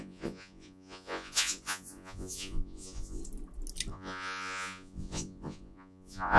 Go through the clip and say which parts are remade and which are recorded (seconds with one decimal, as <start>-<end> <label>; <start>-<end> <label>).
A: 0.0-3.2 remade; 3.2-3.9 recorded; 3.9-6.4 remade